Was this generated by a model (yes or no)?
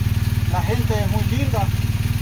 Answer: no